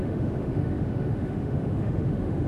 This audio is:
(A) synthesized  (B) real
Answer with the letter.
A